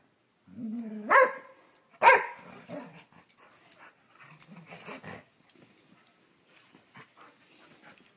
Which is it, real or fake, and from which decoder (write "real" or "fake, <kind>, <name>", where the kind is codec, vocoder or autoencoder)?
real